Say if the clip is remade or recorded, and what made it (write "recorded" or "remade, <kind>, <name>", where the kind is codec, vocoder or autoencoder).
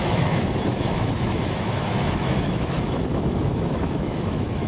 remade, autoencoder, DAC-VAE